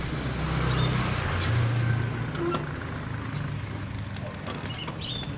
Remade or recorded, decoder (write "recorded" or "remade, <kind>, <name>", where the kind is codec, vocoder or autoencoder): recorded